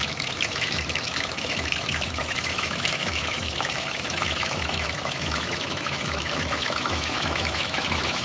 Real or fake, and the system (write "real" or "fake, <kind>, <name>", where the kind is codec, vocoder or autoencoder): fake, autoencoder, DAC-VAE